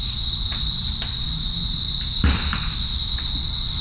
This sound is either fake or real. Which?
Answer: real